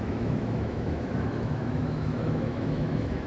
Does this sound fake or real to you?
fake